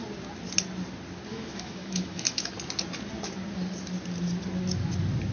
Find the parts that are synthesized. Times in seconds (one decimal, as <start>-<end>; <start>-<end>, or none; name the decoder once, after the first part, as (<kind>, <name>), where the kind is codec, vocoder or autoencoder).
1.3-2.5 (autoencoder, DAC-VAE)